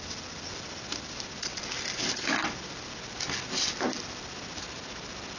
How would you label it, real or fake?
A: real